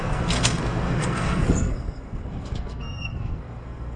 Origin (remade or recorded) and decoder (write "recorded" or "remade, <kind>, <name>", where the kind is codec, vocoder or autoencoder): remade, codec, SNAC